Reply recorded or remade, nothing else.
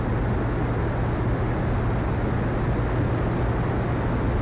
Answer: recorded